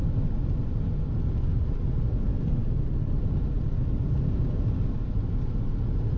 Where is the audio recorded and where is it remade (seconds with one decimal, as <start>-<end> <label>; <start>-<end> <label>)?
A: 0.0-6.2 recorded